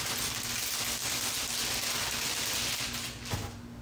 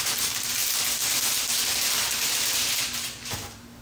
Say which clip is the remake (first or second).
second